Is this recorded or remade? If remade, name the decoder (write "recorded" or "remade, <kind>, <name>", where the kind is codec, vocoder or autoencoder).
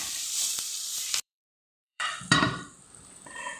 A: remade, vocoder, BigVGAN v2